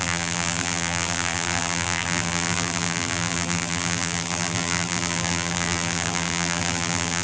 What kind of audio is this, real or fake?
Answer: fake